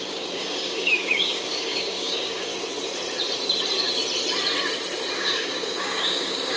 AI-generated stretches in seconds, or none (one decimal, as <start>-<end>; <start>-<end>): 0.0-2.5; 5.2-6.6